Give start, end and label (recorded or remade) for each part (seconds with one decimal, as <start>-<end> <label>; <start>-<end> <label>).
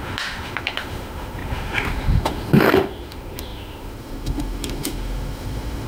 0.0-5.9 remade